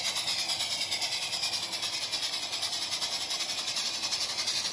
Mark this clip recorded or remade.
recorded